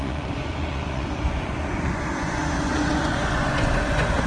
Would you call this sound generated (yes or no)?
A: yes